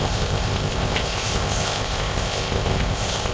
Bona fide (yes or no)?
no